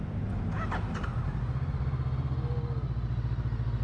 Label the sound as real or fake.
real